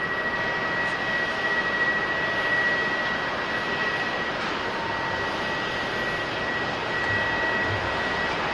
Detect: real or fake real